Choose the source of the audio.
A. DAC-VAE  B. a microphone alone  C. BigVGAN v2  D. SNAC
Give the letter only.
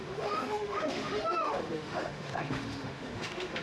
A